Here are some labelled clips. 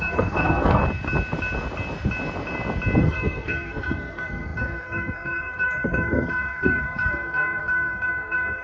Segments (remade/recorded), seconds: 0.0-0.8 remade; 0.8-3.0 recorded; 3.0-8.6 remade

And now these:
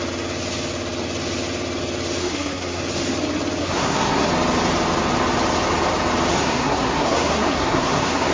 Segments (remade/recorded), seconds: 0.0-2.2 recorded; 2.2-2.8 remade; 2.8-3.6 recorded; 3.6-4.3 remade; 4.3-6.3 recorded; 6.3-8.3 remade

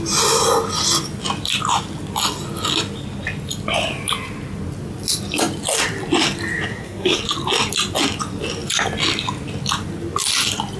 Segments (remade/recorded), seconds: 0.0-6.7 recorded; 6.7-7.2 remade; 7.2-10.8 recorded

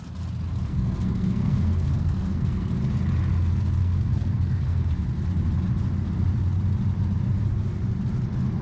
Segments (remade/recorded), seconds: 0.0-0.7 recorded; 0.7-2.7 remade; 2.7-3.8 recorded; 3.8-4.9 remade; 4.9-8.6 recorded

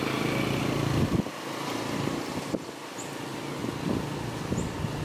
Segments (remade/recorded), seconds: 0.0-5.0 recorded

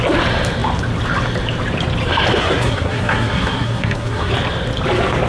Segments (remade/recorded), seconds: 0.0-2.4 recorded; 2.4-4.3 remade; 4.3-5.3 recorded

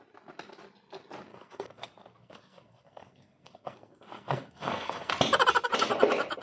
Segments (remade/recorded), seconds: 0.0-1.3 recorded; 1.3-5.1 remade; 5.1-6.4 recorded